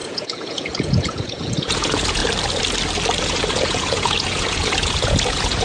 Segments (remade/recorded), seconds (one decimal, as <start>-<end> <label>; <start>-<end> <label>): 0.0-2.2 remade; 2.2-3.2 recorded; 3.2-5.6 remade